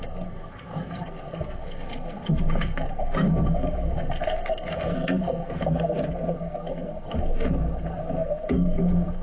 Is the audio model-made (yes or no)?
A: yes